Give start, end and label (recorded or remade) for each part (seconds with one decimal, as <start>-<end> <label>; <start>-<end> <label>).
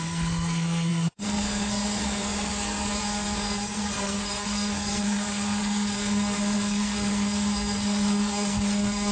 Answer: 0.0-9.1 remade